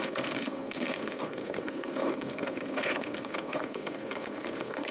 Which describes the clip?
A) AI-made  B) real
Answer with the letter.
A